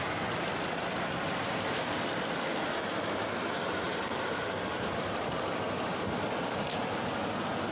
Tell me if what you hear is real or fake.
real